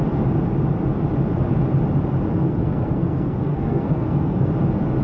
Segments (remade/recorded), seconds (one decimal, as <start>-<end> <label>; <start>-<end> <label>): 0.0-2.3 recorded; 2.3-4.5 remade; 4.5-5.0 recorded